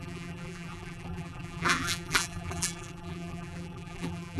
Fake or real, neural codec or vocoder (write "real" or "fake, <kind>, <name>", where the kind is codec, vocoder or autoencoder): fake, vocoder, BigVGAN v2